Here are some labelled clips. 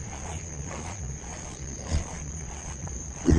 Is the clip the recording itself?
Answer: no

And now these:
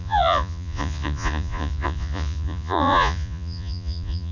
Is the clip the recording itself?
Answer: no